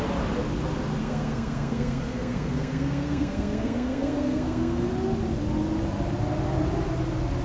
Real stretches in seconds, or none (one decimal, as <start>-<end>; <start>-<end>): 0.0-1.0; 4.9-7.4